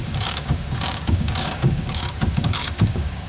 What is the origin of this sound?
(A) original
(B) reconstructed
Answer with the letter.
B